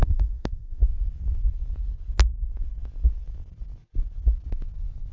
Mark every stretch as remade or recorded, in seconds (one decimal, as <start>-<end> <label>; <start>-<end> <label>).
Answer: 0.0-0.8 remade; 0.8-5.1 recorded